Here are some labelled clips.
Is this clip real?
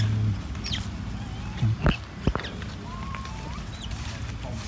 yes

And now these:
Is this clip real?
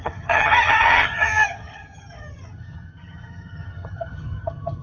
no